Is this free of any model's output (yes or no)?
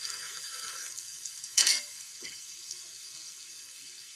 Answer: no